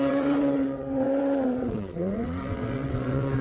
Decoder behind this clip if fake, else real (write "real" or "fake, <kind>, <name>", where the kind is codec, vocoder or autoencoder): fake, vocoder, WaveNeXt